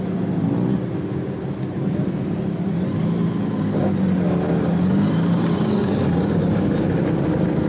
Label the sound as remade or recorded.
recorded